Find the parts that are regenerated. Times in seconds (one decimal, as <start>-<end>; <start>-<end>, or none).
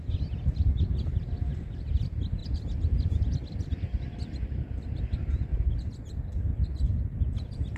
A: none